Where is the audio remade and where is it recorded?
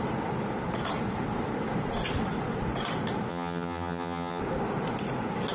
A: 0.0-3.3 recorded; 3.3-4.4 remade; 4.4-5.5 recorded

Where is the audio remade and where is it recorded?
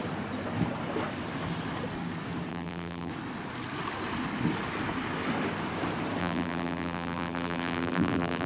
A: 0.0-2.5 recorded; 2.5-3.1 remade; 3.1-6.2 recorded; 6.2-8.5 remade